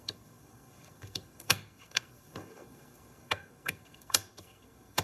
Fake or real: fake